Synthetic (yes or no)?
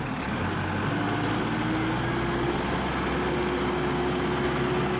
no